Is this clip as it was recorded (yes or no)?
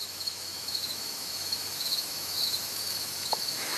no